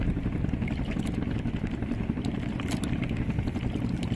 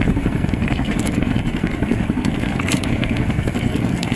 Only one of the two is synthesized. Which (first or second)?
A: second